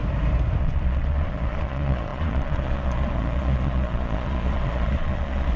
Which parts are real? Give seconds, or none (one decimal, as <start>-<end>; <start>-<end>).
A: 0.0-0.6